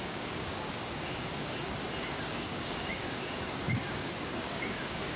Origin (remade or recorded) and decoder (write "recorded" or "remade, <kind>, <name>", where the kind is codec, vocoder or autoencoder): remade, codec, DAC